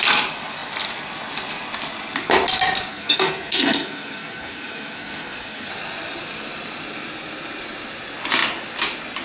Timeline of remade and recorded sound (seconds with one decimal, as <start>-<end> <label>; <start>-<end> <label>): 0.0-2.9 recorded; 2.9-5.7 remade; 5.7-9.2 recorded